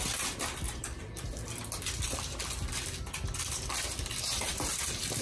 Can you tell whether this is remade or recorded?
recorded